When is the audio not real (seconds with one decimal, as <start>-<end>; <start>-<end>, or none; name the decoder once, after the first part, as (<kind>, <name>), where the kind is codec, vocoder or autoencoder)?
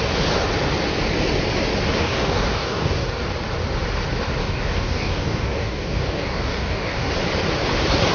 2.0-3.2 (codec, DAC); 4.4-7.1